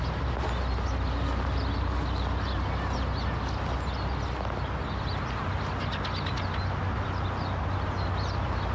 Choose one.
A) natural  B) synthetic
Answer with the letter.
A